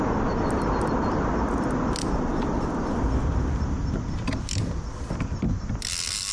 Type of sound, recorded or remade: recorded